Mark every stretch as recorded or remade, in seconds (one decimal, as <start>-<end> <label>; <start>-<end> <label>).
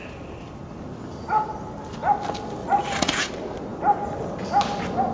0.0-2.6 recorded; 2.6-3.3 remade; 3.3-5.1 recorded